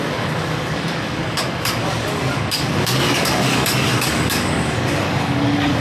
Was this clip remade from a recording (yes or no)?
yes